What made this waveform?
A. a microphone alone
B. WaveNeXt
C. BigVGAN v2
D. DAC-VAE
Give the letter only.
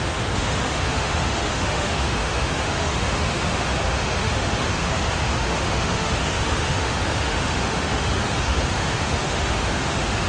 D